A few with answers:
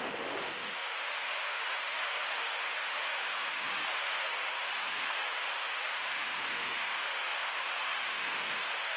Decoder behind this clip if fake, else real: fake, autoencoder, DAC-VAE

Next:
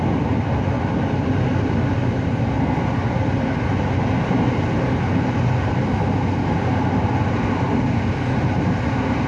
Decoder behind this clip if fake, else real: real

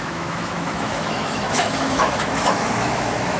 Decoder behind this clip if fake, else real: fake, autoencoder, DAC-VAE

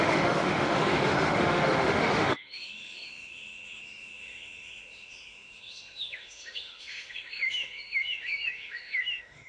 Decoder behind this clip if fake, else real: fake, autoencoder, DAC-VAE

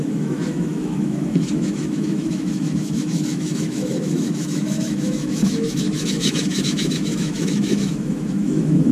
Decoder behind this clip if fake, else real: fake, autoencoder, DAC-VAE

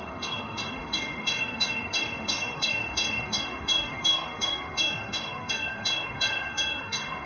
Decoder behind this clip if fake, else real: fake, autoencoder, DAC-VAE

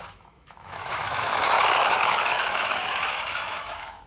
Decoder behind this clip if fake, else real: fake, autoencoder, DAC-VAE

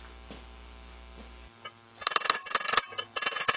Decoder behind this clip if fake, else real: real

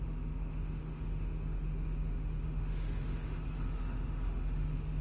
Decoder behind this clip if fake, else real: fake, autoencoder, DAC-VAE